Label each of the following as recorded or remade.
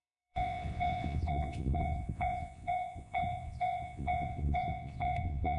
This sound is remade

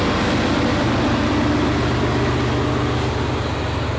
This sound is recorded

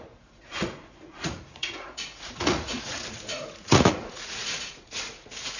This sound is remade